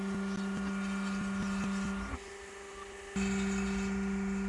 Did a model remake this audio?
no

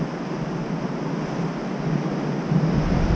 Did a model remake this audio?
no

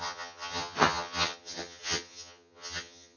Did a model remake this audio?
yes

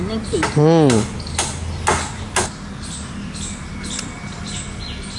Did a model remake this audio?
no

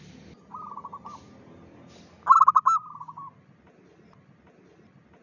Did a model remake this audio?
no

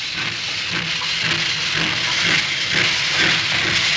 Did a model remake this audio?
no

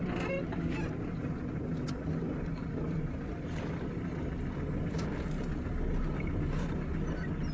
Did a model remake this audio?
no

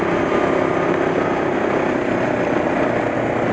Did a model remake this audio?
no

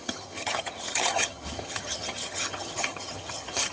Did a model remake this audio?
yes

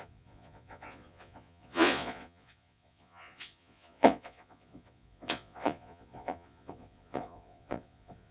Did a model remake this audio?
yes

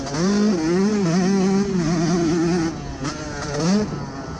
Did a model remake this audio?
no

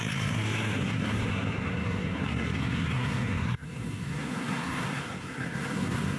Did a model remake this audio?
yes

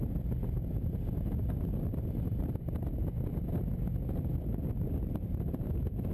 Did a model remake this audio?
no